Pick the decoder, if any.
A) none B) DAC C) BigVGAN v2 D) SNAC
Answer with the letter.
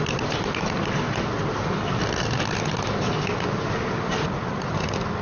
A